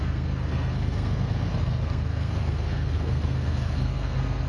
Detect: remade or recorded remade